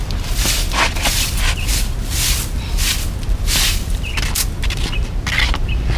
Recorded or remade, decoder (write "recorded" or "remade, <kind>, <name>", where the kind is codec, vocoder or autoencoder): recorded